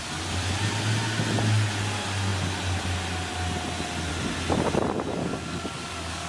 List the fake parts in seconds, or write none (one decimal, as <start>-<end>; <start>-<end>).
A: 5.2-6.3